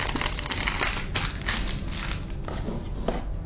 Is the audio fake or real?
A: real